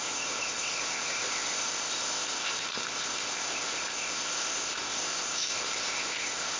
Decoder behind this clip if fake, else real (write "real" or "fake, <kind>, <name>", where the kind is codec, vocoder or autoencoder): fake, codec, ZipCodec